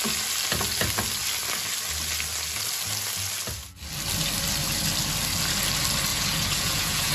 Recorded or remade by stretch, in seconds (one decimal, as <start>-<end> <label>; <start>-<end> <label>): 0.0-6.1 recorded; 6.1-7.1 remade